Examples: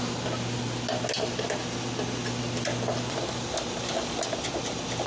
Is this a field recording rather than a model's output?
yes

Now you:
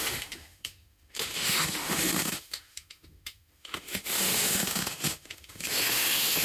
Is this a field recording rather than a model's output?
no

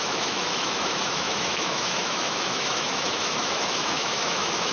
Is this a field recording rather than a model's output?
no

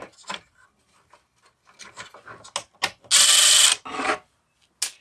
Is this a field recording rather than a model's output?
yes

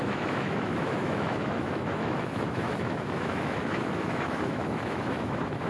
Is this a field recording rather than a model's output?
no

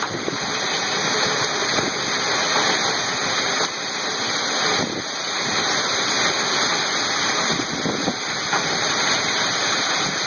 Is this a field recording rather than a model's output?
yes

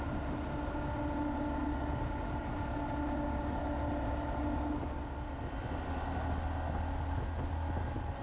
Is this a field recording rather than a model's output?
yes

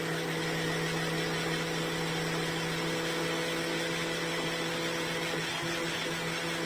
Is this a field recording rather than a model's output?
yes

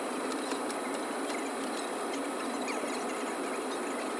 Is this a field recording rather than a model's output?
yes